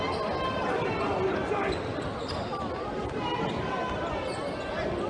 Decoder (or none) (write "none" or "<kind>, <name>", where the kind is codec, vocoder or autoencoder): none